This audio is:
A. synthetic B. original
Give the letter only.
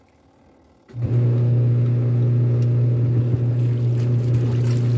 B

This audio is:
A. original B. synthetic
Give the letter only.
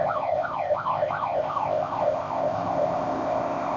B